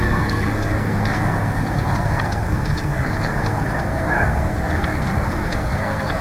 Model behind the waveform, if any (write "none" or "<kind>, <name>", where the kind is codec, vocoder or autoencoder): codec, SNAC